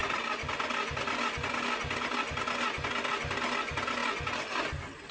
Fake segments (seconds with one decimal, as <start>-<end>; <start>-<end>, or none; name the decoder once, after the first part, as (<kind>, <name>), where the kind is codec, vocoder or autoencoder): none